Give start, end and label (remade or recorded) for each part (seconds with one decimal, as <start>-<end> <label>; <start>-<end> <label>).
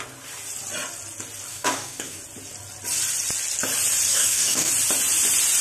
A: 0.0-1.5 recorded; 1.5-2.2 remade; 2.2-4.1 recorded; 4.1-4.7 remade; 4.7-5.6 recorded